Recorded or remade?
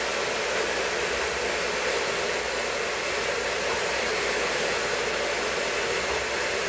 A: recorded